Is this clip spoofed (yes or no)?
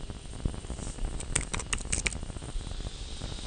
no